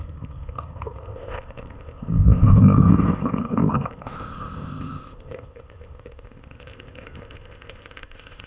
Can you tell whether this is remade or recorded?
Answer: remade